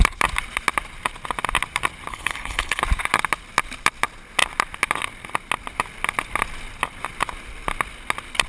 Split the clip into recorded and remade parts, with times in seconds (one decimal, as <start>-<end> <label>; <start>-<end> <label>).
0.0-2.1 recorded; 2.1-2.8 remade; 2.8-8.5 recorded